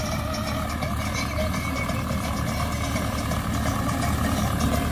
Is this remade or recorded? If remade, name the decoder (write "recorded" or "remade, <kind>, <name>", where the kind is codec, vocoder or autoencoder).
recorded